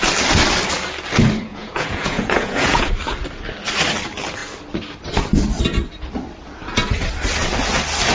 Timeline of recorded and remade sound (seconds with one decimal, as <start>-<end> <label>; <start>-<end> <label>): 0.0-1.5 recorded; 1.5-2.9 remade; 2.9-8.1 recorded